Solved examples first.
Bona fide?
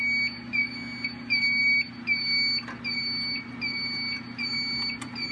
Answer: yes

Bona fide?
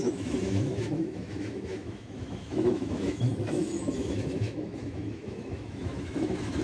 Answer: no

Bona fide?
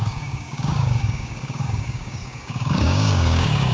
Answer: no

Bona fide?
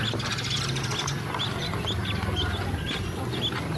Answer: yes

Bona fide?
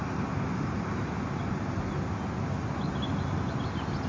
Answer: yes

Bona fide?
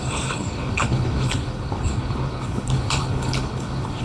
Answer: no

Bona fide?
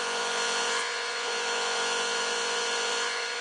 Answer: no